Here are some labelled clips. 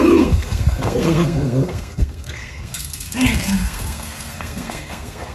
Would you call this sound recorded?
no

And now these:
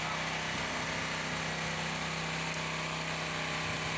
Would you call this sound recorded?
yes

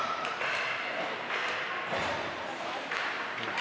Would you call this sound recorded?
no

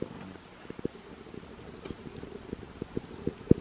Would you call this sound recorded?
yes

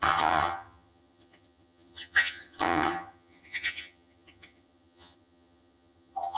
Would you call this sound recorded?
no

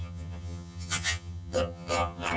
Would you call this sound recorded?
no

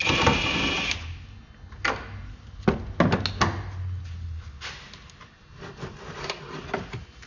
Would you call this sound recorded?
yes